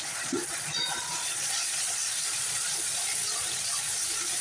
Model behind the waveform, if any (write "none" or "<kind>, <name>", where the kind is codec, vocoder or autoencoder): vocoder, Vocos